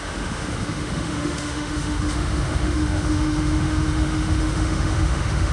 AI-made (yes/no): yes